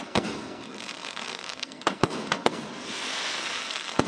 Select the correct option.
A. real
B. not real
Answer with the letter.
B